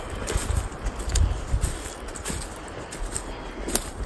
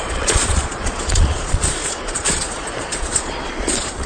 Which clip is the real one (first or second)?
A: first